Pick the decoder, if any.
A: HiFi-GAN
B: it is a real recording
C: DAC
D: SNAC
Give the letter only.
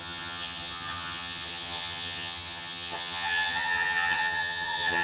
A